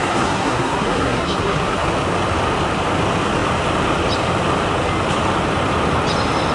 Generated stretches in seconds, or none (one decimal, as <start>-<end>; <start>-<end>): 0.0-1.9